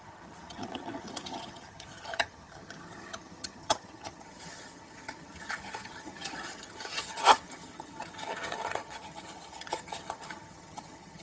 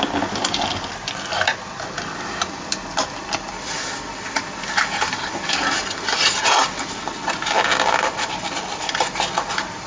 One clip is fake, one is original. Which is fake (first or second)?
first